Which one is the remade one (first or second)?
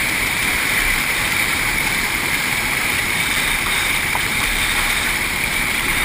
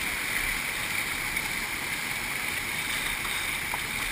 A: first